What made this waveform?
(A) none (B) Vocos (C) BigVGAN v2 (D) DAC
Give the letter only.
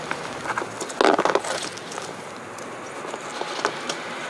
A